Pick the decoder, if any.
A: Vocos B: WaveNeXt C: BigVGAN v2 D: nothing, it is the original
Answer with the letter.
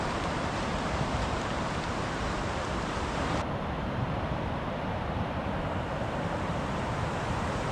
C